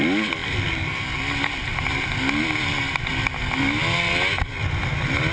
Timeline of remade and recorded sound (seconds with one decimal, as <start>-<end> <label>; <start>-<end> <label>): 0.0-5.3 recorded